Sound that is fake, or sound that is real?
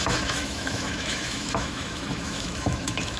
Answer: fake